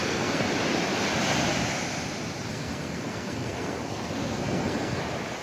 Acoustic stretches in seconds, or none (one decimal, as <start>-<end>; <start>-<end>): 0.5-2.5; 5.0-5.4